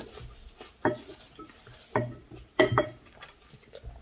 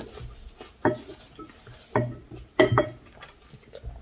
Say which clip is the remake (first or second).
first